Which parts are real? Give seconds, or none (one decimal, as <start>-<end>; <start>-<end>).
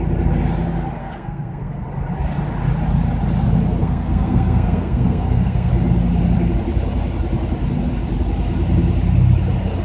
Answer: 0.0-1.0; 1.7-3.8; 5.7-9.8